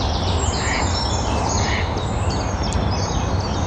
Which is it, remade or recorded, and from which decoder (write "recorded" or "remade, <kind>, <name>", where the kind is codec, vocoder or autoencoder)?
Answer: remade, vocoder, BigVGAN v2